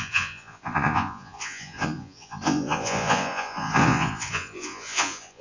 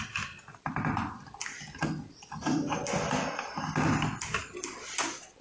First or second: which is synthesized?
first